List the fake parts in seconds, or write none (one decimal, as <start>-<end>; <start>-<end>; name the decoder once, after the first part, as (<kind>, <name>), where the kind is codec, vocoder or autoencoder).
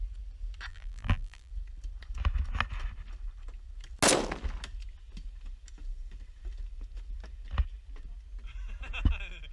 0.7-1.5 (vocoder, BigVGAN v2)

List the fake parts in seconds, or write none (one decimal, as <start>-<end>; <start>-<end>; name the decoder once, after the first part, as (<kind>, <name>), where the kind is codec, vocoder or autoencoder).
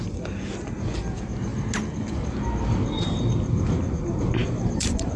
4.4-5.2 (vocoder, BigVGAN v2)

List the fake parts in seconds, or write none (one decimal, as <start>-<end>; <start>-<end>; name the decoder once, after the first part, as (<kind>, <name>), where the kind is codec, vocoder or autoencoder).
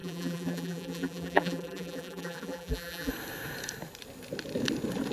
0.0-3.1 (vocoder, BigVGAN v2)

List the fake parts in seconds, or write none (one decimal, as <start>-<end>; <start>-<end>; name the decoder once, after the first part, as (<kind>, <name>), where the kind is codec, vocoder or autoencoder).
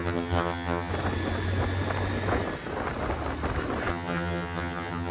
0.0-0.9 (vocoder, HiFi-GAN); 3.9-5.1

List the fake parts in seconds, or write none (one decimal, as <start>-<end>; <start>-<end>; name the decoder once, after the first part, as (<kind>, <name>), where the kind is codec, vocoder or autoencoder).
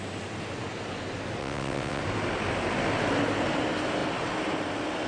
1.4-2.0 (vocoder, WaveNeXt)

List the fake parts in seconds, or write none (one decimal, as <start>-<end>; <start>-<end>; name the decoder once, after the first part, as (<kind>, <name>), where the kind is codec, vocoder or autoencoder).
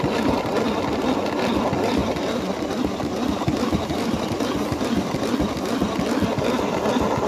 none